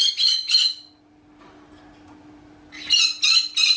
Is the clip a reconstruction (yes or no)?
no